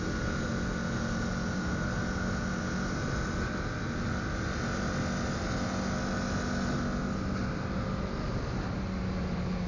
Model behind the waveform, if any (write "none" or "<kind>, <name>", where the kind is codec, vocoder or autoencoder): none